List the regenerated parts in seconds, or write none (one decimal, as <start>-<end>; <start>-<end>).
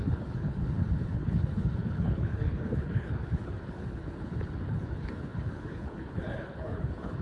0.0-7.2